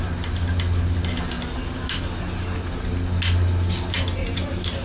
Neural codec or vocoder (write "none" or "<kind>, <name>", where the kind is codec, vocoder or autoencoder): none